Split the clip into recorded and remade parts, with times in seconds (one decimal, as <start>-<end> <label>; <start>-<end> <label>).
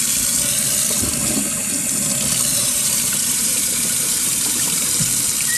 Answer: 0.0-2.5 recorded; 2.5-5.0 remade; 5.0-5.6 recorded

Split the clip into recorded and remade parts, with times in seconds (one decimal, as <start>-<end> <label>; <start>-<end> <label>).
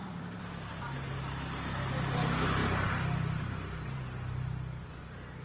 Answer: 0.0-0.8 remade; 0.8-2.6 recorded; 2.6-4.4 remade; 4.4-5.4 recorded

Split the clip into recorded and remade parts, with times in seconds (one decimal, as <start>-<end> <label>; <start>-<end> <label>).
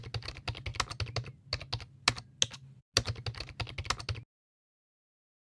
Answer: 0.0-5.5 recorded